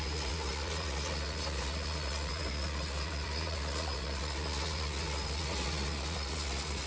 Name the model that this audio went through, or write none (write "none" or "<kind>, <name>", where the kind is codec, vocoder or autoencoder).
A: vocoder, Vocos